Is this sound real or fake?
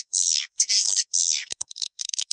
fake